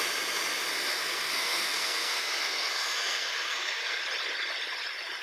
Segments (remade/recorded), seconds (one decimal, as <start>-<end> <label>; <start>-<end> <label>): 0.0-0.9 recorded; 0.9-4.0 remade; 4.0-5.2 recorded